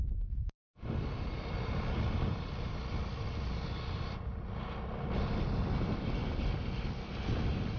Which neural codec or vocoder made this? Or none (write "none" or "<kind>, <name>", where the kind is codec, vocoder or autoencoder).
none